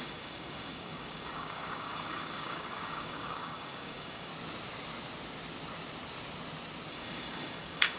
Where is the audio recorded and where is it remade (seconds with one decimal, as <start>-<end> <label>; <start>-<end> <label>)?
0.0-4.3 remade; 4.3-6.9 recorded; 6.9-8.0 remade